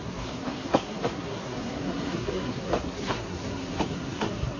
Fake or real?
fake